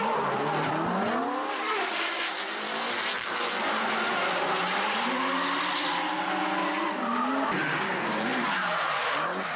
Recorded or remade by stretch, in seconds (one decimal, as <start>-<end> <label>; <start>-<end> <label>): 0.0-9.6 recorded